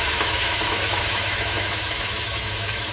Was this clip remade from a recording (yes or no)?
yes